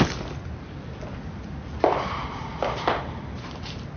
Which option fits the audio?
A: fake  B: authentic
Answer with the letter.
B